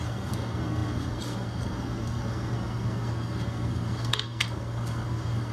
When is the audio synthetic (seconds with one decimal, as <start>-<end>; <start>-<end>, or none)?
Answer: 0.0-5.5